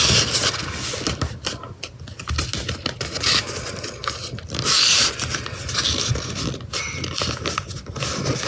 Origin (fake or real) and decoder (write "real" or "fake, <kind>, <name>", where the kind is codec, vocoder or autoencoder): real